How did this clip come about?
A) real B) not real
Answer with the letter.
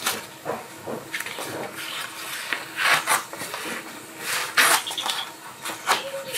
A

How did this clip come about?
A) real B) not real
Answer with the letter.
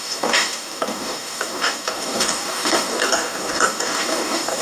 B